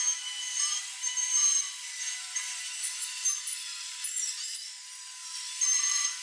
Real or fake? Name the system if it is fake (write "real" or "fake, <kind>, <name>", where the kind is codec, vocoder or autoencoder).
fake, vocoder, BigVGAN v2